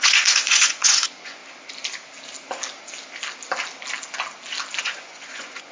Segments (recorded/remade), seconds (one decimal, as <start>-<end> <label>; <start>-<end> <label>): 0.0-1.4 remade; 1.4-4.8 recorded; 4.8-5.7 remade